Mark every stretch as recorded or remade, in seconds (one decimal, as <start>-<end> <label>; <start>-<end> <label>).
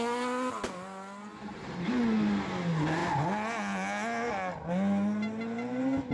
0.0-1.3 recorded; 1.3-2.0 remade; 2.0-6.1 recorded